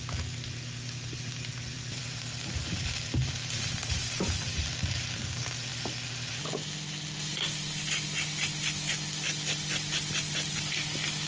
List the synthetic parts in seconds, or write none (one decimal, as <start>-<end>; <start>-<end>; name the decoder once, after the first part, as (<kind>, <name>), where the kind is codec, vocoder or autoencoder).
1.7-4.0 (vocoder, BigVGAN v2)